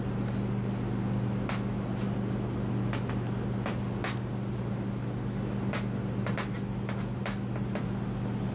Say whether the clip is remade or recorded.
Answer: recorded